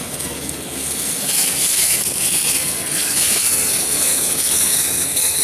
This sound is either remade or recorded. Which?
remade